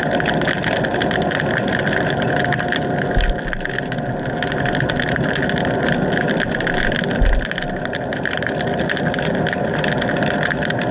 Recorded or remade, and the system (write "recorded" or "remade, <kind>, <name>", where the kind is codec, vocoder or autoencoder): recorded